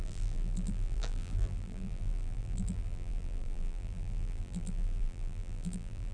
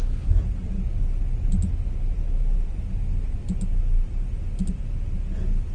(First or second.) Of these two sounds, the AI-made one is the first